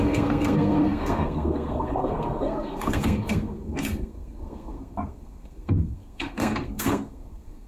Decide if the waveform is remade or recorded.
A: remade